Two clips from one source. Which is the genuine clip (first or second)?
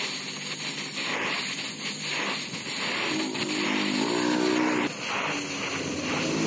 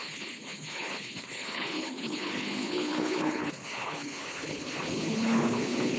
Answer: first